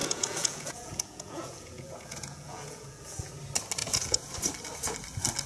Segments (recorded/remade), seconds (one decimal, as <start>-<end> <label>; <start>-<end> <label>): 0.0-3.3 remade; 3.3-3.8 recorded; 3.8-4.3 remade; 4.3-5.5 recorded